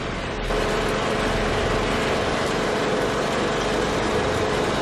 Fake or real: real